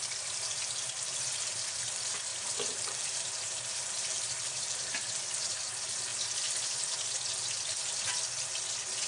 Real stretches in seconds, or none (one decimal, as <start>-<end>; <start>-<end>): 0.0-2.3; 5.2-9.1